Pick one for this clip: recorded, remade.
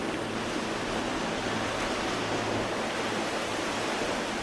recorded